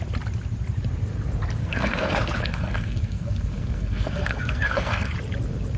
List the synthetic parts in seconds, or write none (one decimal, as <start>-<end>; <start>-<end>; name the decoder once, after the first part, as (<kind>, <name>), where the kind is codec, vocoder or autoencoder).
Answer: 1.6-5.1 (codec, SNAC)